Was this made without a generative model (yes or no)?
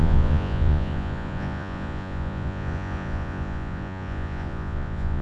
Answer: no